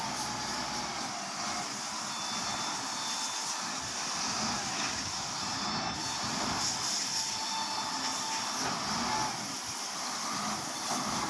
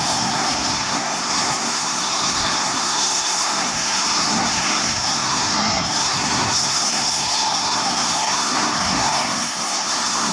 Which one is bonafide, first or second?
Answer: first